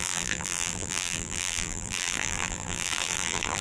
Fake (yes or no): yes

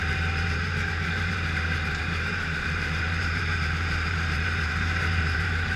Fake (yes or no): yes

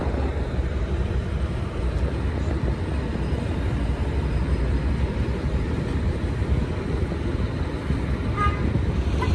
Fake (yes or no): yes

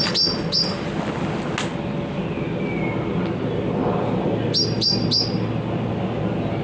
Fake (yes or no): no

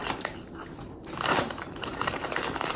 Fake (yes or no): yes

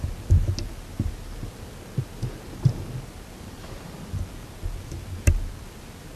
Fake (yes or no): no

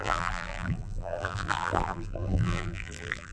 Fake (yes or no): yes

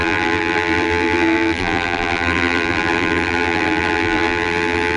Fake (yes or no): yes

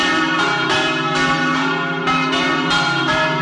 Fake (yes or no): yes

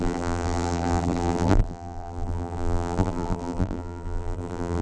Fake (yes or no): yes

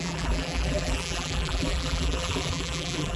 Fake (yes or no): yes